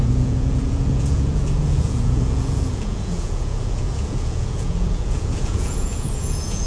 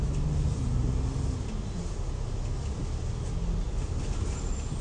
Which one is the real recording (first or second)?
second